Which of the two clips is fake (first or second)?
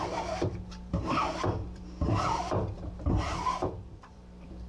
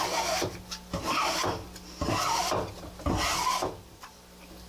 first